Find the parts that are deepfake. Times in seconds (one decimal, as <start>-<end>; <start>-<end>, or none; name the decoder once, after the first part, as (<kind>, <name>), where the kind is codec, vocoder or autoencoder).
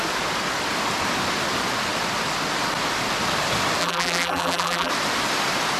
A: 3.8-4.9 (vocoder, BigVGAN v2)